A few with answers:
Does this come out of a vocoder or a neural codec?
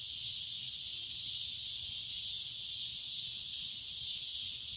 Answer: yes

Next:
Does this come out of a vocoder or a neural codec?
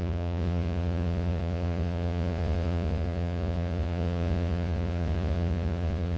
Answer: yes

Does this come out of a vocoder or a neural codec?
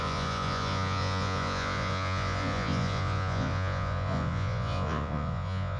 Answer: yes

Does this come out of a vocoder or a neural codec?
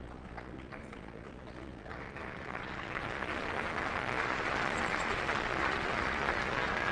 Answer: yes